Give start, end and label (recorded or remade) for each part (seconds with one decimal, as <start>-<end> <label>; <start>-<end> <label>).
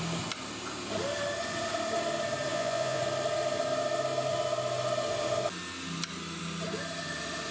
0.0-2.5 recorded; 2.5-3.0 remade; 3.0-7.5 recorded